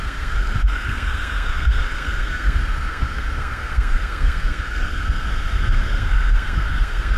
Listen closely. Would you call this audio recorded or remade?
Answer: remade